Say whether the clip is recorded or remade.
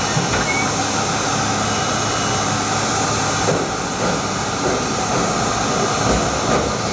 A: recorded